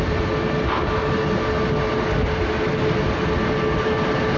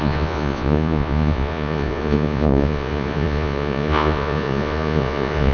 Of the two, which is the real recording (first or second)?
first